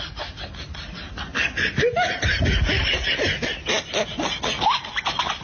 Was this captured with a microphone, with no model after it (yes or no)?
yes